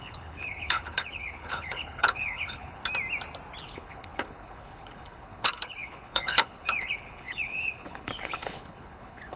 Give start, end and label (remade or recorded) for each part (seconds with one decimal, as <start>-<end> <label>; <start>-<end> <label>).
0.0-2.8 remade; 2.8-3.6 recorded; 3.6-9.4 remade